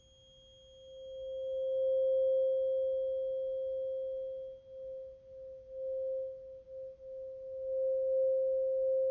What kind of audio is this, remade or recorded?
recorded